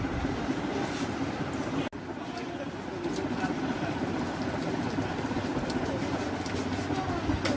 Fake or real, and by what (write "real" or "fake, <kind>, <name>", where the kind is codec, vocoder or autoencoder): real